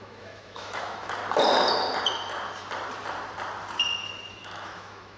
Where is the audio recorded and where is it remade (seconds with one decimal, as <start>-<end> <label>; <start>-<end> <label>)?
0.0-1.2 remade; 1.2-4.3 recorded; 4.3-5.2 remade

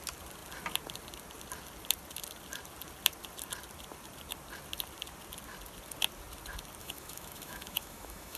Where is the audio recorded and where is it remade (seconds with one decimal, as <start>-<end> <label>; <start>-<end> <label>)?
0.0-6.8 recorded; 6.8-8.4 remade

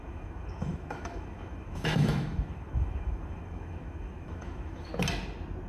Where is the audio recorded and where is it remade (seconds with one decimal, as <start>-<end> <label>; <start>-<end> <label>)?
0.0-4.9 remade; 4.9-5.7 recorded

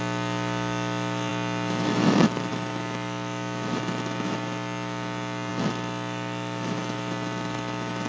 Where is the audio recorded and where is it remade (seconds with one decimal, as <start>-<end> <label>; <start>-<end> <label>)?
0.0-8.1 remade

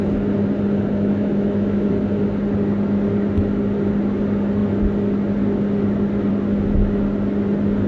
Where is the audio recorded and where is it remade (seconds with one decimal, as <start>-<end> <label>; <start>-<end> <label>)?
0.0-1.2 recorded; 1.2-1.9 remade; 1.9-7.9 recorded

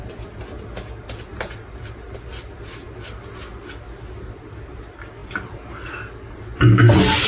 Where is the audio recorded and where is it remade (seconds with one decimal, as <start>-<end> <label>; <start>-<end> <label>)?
0.0-7.3 recorded